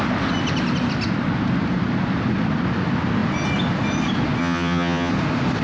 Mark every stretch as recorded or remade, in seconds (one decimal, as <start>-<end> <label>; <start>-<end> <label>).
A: 0.0-4.4 recorded; 4.4-5.1 remade; 5.1-5.6 recorded